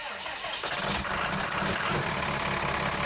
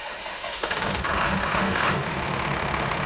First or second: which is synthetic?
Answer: second